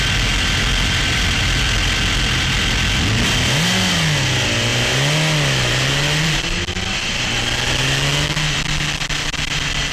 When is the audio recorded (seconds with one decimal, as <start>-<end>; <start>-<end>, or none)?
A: 0.0-9.9